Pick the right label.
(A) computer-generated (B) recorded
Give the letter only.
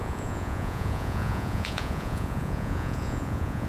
A